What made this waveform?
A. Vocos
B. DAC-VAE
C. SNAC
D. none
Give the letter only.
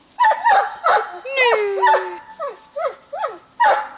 D